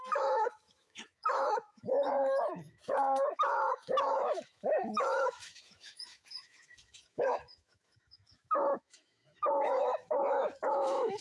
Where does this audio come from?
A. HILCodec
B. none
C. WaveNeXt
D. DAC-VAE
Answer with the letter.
D